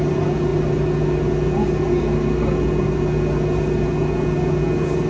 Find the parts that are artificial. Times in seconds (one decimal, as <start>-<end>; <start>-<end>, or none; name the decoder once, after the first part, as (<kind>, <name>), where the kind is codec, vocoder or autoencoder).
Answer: none